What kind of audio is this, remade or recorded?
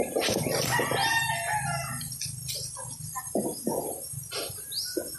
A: recorded